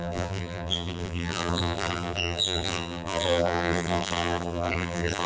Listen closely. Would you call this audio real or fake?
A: fake